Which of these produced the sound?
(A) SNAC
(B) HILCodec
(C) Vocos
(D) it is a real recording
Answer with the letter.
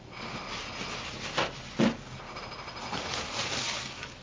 D